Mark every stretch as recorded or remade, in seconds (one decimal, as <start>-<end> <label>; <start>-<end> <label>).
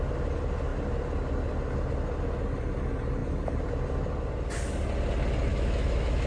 0.0-5.5 recorded; 5.5-6.3 remade